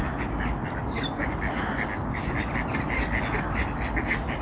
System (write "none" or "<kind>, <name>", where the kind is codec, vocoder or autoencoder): none